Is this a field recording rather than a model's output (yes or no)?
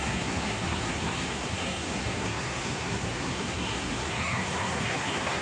no